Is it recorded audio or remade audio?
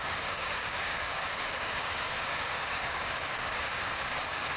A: remade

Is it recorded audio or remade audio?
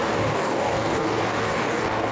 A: remade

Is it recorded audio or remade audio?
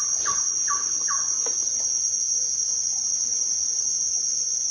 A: recorded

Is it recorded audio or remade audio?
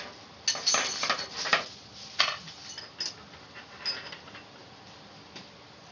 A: recorded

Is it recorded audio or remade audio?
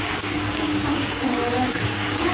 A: remade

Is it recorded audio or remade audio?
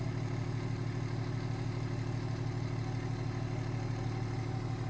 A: recorded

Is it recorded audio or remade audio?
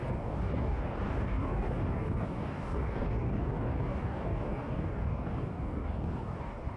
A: remade